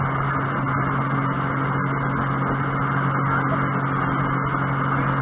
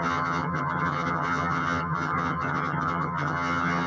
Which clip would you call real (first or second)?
first